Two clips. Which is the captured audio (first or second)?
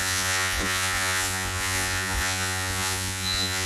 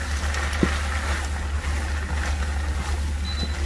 second